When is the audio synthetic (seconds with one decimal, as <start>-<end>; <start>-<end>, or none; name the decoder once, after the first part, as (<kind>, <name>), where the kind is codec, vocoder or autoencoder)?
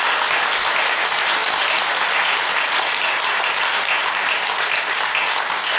none